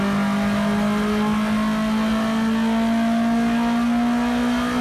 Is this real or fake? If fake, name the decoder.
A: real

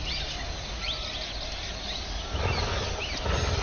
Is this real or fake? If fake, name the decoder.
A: real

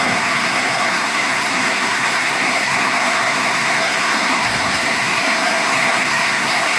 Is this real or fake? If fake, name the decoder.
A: fake, codec, SNAC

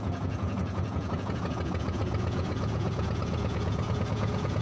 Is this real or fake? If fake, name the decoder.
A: fake, vocoder, Vocos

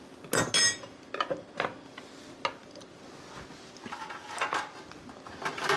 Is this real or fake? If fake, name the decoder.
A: real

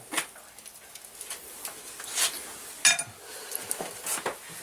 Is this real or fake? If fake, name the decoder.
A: real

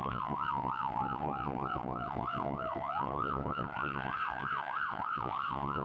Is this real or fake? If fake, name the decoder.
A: fake, vocoder, WaveNeXt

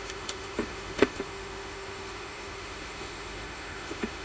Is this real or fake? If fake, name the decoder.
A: fake, autoencoder, DAC-VAE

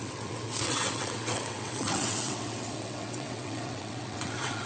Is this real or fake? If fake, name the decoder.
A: fake, vocoder, WaveNeXt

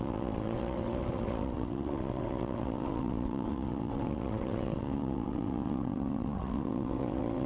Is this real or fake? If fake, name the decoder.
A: fake, vocoder, WaveNeXt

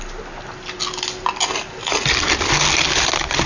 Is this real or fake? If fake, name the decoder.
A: real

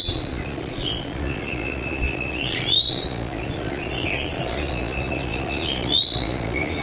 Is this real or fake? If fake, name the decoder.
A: fake, vocoder, Vocos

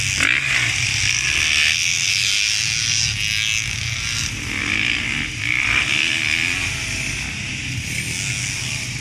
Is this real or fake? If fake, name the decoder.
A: real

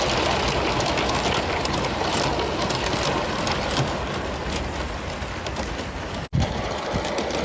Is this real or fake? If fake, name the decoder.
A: real